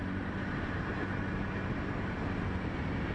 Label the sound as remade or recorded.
recorded